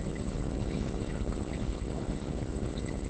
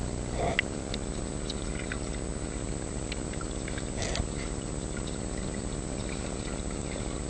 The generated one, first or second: first